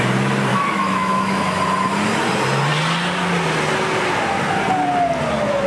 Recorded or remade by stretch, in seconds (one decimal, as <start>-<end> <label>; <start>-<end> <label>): 0.0-0.5 recorded; 0.5-1.4 remade; 1.4-5.7 recorded